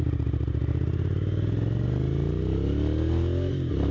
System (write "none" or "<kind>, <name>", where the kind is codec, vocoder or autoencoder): none